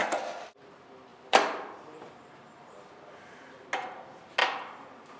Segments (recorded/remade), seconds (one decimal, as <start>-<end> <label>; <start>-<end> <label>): 0.0-1.1 recorded; 1.1-3.0 remade; 3.0-4.4 recorded; 4.4-5.2 remade